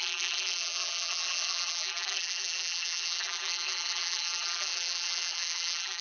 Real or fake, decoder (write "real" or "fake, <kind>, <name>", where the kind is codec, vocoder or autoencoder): fake, vocoder, BigVGAN v2